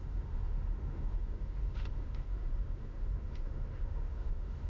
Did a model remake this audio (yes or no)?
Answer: yes